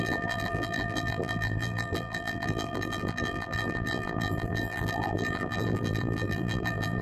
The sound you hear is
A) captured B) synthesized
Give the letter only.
B